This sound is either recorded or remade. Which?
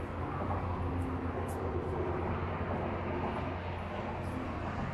recorded